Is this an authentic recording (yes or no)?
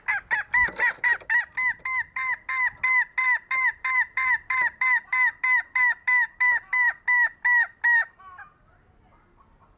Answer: yes